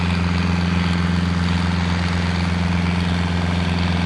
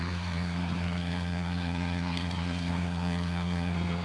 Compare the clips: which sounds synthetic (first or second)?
second